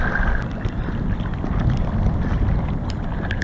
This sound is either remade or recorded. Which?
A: recorded